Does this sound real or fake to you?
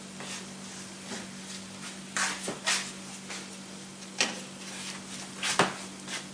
real